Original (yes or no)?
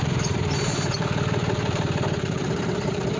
no